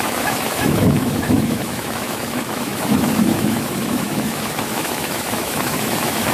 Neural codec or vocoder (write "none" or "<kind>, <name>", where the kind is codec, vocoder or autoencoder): autoencoder, DAC-VAE